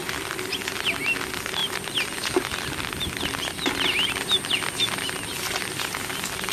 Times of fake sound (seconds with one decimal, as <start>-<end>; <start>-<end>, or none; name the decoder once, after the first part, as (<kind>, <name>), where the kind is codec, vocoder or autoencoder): none